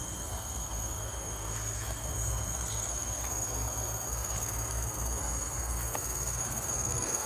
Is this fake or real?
fake